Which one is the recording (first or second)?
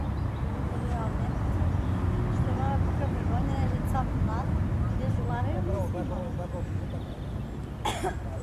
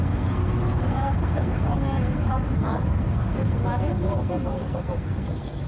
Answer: first